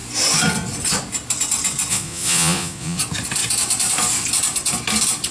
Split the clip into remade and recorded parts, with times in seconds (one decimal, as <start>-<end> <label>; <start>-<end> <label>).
0.0-1.9 recorded; 1.9-3.0 remade; 3.0-5.3 recorded